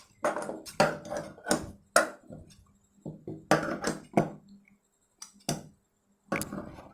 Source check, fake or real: real